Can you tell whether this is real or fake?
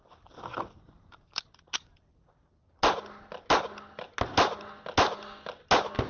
real